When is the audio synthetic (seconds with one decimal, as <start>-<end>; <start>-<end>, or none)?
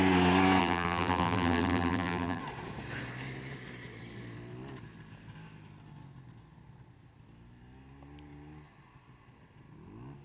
0.6-2.4